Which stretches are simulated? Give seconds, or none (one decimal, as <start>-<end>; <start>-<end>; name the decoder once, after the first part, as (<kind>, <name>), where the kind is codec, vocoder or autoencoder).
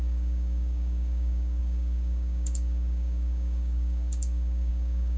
0.0-5.2 (codec, DAC)